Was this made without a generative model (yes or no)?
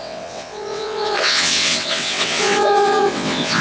no